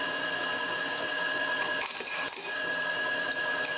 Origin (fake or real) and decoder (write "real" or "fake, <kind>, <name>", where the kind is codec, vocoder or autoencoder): real